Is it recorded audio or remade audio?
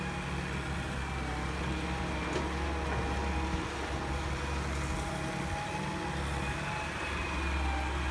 recorded